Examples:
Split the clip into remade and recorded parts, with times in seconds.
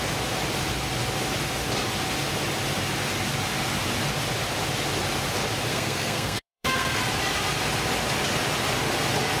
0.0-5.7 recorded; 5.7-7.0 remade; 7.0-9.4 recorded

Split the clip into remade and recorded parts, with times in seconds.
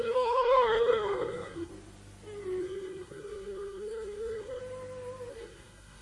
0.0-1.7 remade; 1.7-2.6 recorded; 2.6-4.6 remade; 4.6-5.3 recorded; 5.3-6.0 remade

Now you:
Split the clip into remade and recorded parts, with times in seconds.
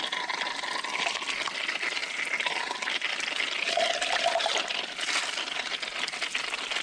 0.0-6.8 recorded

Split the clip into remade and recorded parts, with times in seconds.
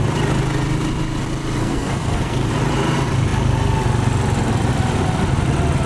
0.0-1.6 recorded; 1.6-2.5 remade; 2.5-5.9 recorded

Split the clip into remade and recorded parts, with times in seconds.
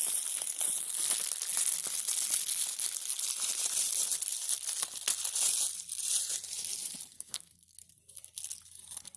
0.0-7.1 recorded; 7.1-7.8 remade; 7.8-9.2 recorded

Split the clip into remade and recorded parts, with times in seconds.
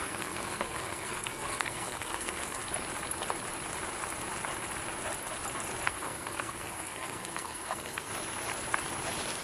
0.0-2.6 remade; 2.6-5.9 recorded; 5.9-8.1 remade; 8.1-9.4 recorded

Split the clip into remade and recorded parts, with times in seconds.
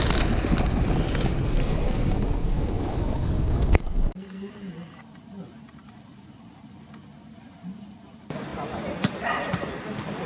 0.0-1.5 recorded; 1.5-4.5 remade; 4.5-10.3 recorded